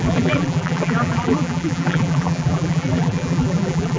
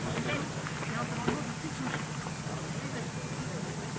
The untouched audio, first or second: second